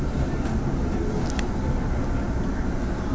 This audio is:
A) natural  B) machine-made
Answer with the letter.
A